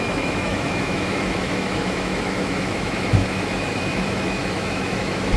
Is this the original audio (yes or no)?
no